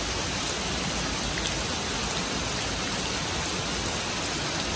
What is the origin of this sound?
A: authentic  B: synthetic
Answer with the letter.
A